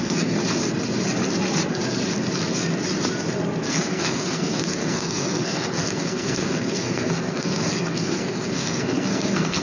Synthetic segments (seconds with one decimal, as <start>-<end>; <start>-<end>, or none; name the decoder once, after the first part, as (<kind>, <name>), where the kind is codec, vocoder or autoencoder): 0.0-0.4 (codec, SNAC); 3.7-9.6